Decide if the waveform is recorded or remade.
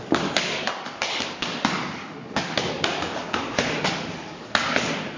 remade